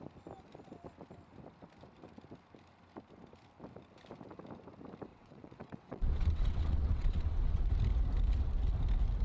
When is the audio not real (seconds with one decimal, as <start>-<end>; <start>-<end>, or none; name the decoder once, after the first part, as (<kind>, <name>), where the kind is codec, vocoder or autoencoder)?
5.1-7.6 (vocoder, WaveNeXt)